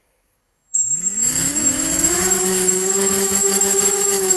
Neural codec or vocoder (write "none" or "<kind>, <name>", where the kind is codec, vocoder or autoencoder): codec, DAC